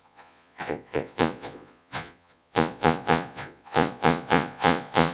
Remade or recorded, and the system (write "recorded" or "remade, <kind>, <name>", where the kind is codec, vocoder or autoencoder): remade, vocoder, Vocos